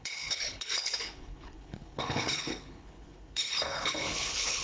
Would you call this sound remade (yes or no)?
yes